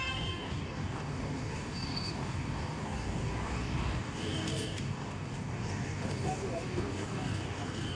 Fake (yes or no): yes